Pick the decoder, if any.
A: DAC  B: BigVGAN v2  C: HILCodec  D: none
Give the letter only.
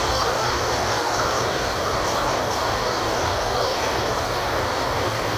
A